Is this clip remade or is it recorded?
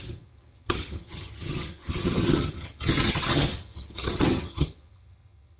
remade